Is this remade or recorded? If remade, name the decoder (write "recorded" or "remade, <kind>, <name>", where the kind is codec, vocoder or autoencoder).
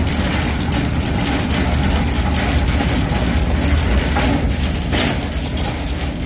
recorded